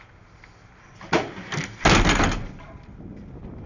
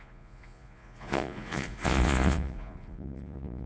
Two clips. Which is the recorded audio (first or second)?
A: first